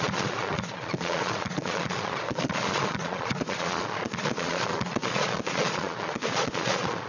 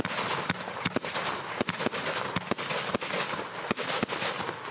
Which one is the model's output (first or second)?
first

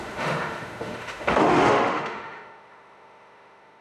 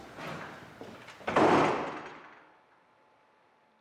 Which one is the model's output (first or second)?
first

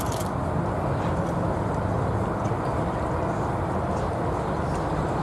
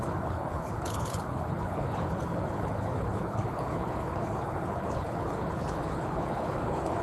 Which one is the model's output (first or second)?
second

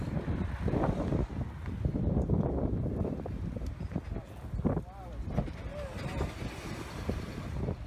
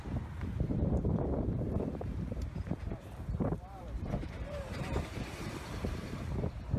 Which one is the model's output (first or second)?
second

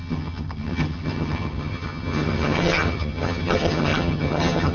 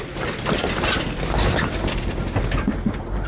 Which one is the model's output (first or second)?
first